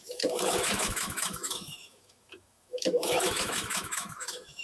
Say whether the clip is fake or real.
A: fake